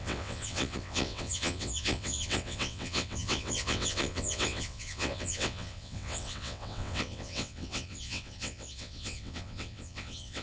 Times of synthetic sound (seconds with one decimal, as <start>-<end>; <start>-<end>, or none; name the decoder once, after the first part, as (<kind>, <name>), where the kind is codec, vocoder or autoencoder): 0.0-10.4 (vocoder, WaveNeXt)